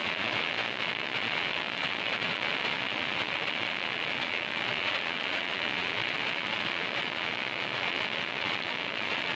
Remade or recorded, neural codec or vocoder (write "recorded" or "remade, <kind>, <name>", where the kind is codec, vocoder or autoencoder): remade, vocoder, Vocos